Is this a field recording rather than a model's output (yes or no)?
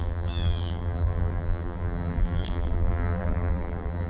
no